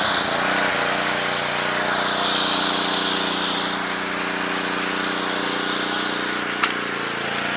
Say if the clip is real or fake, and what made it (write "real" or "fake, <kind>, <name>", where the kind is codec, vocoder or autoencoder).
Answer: real